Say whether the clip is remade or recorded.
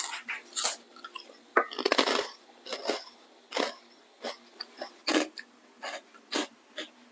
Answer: recorded